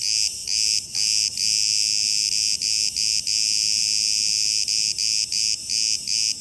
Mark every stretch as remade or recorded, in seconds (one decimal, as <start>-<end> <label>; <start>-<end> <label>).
0.0-6.4 recorded

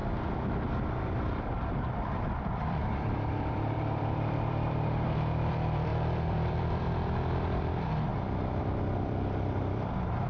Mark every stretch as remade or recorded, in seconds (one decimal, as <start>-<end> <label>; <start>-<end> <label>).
0.0-1.4 recorded; 1.4-8.1 remade; 8.1-8.6 recorded; 8.6-10.3 remade

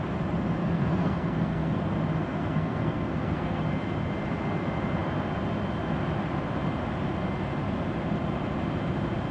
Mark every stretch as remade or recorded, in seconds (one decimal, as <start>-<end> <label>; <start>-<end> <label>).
0.0-0.6 recorded; 0.6-1.8 remade; 1.8-2.2 recorded; 2.2-3.6 remade; 3.6-9.3 recorded

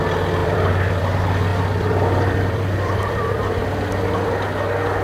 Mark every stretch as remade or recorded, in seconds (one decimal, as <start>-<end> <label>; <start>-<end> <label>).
0.0-0.4 recorded; 0.4-1.0 remade; 1.0-1.5 recorded; 1.5-3.9 remade; 3.9-5.0 recorded

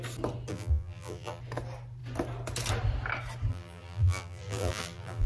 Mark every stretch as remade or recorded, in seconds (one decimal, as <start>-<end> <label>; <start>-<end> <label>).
0.0-0.5 recorded; 0.5-1.4 remade; 1.4-3.5 recorded; 3.5-5.3 remade

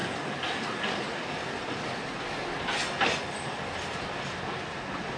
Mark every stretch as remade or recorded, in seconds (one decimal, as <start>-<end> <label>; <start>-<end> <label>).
0.0-5.2 recorded